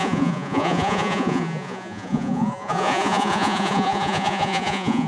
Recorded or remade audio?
remade